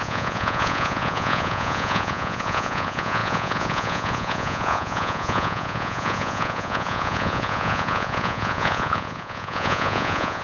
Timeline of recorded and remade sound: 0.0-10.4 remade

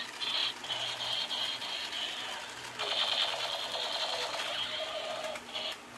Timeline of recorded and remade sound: 0.0-6.0 recorded

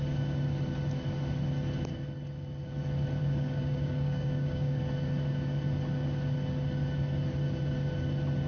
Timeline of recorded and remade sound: 0.0-3.2 recorded; 3.2-4.8 remade; 4.8-8.5 recorded

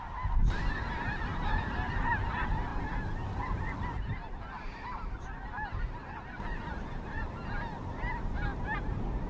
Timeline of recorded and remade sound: 0.0-9.3 recorded